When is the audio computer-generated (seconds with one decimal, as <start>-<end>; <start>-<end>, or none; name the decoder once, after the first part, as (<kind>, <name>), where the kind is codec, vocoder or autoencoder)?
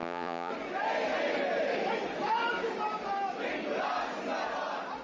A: 0.0-0.5 (vocoder, Vocos)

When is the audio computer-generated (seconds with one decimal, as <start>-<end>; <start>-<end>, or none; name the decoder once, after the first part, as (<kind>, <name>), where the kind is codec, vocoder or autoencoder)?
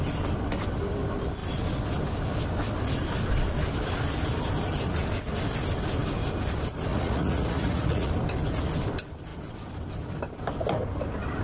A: 6.9-8.1 (vocoder, Vocos)